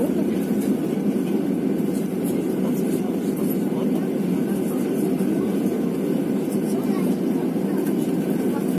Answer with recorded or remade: recorded